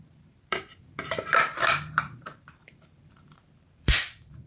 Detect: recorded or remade remade